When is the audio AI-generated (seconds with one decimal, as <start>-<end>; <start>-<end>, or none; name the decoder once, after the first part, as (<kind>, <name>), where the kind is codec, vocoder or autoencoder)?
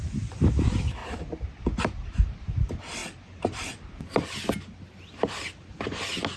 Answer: none